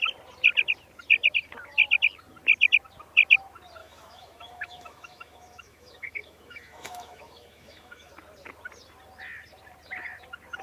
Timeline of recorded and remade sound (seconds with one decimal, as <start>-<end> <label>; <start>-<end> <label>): 0.0-3.8 recorded; 3.8-8.1 remade; 8.1-10.6 recorded